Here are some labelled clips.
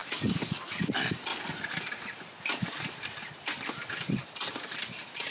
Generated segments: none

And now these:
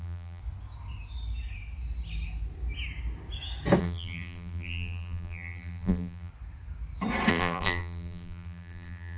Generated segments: 0.0-0.4 (vocoder, BigVGAN v2); 3.8-6.3; 7.3-9.2

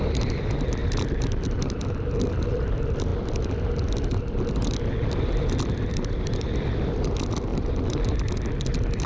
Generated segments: 0.0-3.1 (vocoder, BigVGAN v2); 4.5-9.1

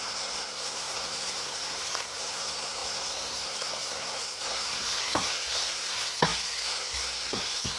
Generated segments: 0.0-7.8 (codec, SNAC)

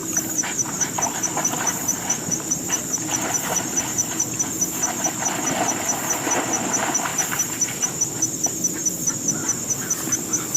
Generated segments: 0.0-4.4 (vocoder, BigVGAN v2); 7.1-8.0

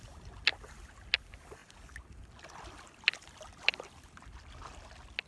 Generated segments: none

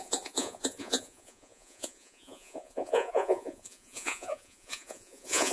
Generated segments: 0.0-5.5 (vocoder, Vocos)

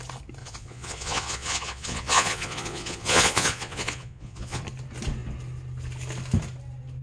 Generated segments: 0.4-4.6 (vocoder, Vocos)